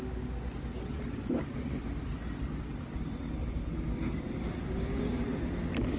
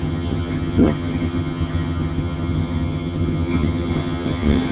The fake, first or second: second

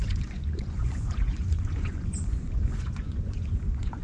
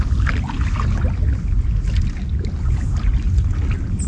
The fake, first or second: first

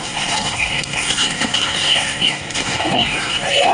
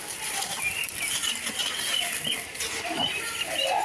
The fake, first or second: first